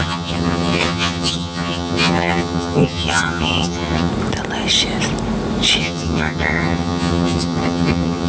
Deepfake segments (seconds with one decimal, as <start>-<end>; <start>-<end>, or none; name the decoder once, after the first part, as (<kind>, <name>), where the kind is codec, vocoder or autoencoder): 0.0-4.1 (vocoder, HiFi-GAN); 5.8-8.3